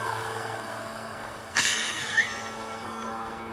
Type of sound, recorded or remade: remade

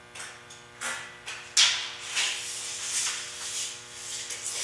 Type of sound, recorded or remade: recorded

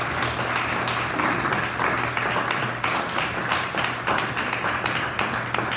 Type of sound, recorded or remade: recorded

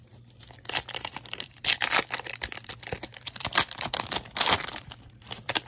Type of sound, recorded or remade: remade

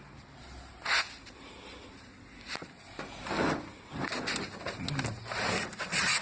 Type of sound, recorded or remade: recorded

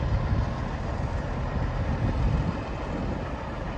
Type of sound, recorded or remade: recorded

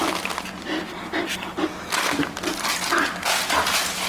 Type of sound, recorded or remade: recorded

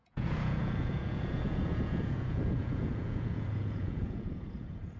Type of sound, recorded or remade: remade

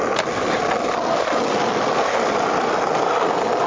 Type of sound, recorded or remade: recorded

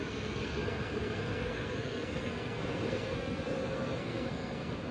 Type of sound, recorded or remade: remade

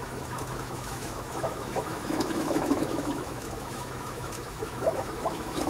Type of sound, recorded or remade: remade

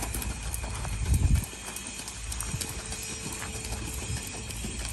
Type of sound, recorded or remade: recorded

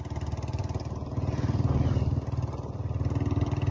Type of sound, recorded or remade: recorded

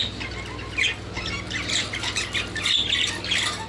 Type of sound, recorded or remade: recorded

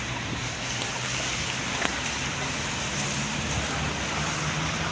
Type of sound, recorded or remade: recorded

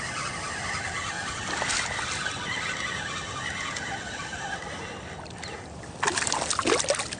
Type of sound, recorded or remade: recorded